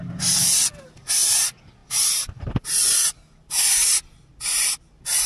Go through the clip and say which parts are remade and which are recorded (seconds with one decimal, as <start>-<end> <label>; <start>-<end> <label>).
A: 0.0-5.3 recorded